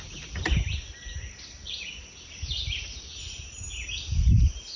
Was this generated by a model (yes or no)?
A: no